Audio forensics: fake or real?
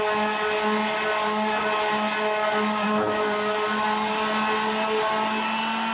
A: real